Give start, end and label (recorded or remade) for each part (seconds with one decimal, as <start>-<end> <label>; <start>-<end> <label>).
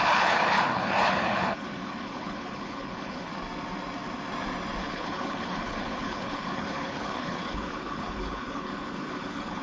0.0-3.3 remade; 3.3-4.8 recorded; 4.8-9.6 remade